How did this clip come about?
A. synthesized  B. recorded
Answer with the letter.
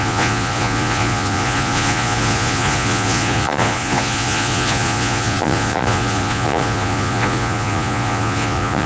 A